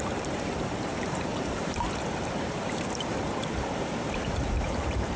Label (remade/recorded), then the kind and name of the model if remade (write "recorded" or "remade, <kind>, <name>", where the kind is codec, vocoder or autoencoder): remade, vocoder, BigVGAN v2